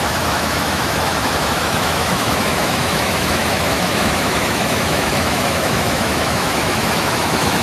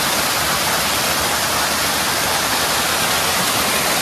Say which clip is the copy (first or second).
first